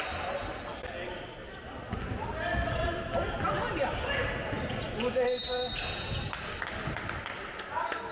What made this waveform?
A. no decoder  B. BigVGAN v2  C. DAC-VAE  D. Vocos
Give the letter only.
A